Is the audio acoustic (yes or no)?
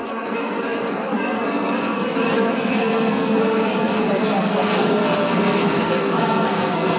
no